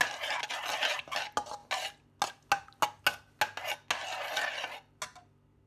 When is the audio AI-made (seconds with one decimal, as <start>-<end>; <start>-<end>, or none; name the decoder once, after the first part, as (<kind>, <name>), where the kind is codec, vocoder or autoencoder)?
none